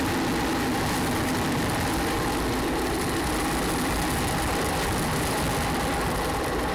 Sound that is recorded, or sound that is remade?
recorded